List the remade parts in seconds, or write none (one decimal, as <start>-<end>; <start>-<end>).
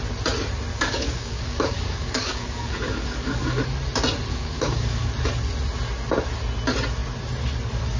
0.7-3.6; 4.3-5.1